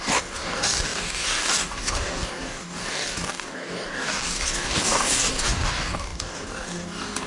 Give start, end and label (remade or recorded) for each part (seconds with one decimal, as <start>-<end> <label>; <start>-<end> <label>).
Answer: 0.0-7.3 remade